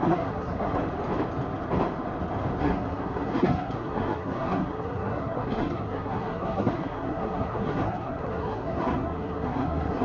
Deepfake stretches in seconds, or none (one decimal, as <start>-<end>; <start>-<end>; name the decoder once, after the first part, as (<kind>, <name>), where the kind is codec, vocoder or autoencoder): 0.0-0.8 (codec, SNAC); 2.6-10.0